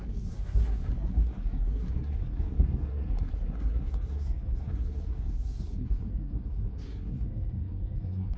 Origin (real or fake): fake